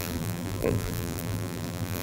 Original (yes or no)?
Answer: no